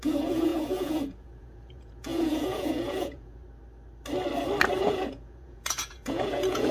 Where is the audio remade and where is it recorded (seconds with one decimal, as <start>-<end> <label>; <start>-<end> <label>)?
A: 0.0-3.4 remade; 3.4-4.8 recorded; 4.8-6.7 remade